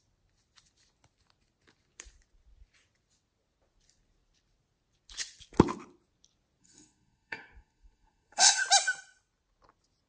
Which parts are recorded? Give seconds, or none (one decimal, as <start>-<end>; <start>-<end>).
0.0-6.6; 8.6-10.1